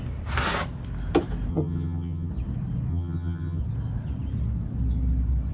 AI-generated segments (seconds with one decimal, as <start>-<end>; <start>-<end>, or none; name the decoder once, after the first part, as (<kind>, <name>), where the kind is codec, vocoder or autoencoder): 1.5-2.3 (vocoder, HiFi-GAN); 2.9-3.6